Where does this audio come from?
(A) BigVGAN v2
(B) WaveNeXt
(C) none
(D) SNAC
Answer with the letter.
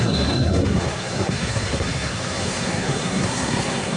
D